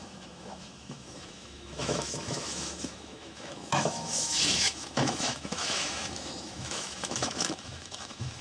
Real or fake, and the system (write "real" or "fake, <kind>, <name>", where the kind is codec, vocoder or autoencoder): fake, autoencoder, DAC-VAE